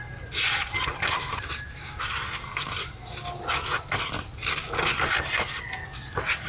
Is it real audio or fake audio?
real